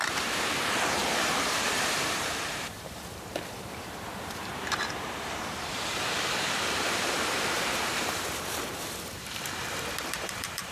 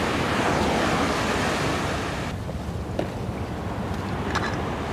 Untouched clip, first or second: second